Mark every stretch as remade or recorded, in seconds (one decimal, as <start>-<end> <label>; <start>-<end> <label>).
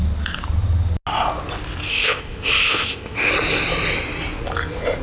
0.0-1.9 recorded; 1.9-3.3 remade; 3.3-5.0 recorded